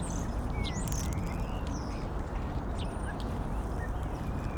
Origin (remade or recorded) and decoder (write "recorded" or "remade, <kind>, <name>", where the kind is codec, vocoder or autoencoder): recorded